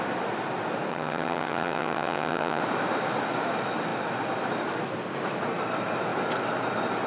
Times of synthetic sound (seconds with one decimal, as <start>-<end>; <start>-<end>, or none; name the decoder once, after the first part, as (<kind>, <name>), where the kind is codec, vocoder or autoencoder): 0.9-2.6 (vocoder, HiFi-GAN)